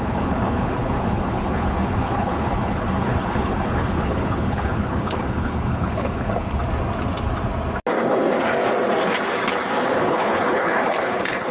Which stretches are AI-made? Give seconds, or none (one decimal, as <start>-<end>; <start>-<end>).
0.0-6.6; 10.1-11.5